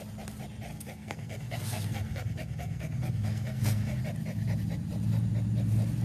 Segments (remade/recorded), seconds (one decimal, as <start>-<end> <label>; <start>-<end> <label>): 0.0-0.7 recorded; 0.7-4.0 remade; 4.0-6.0 recorded